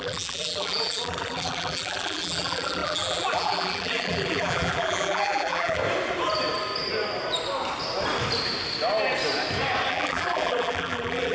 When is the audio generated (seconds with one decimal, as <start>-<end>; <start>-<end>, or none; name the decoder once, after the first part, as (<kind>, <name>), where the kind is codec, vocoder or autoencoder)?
0.0-5.8 (vocoder, BigVGAN v2); 9.9-11.3